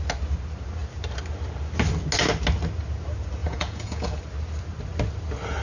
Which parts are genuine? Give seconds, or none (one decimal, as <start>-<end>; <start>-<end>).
0.0-3.4; 4.2-5.6